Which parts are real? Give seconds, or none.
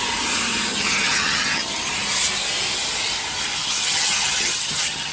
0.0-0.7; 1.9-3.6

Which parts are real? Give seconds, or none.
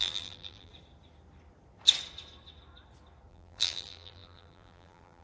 0.7-3.3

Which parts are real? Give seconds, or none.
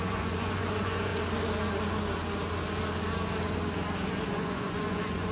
1.1-4.3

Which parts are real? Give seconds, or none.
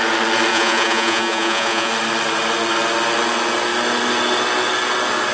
0.0-0.5; 1.9-5.3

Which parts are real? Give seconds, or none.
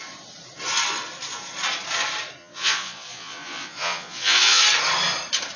0.0-2.4; 4.6-5.6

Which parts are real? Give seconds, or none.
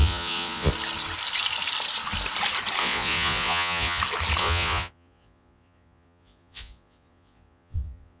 0.7-2.8; 4.0-4.4